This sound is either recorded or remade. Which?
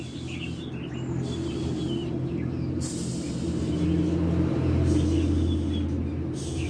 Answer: recorded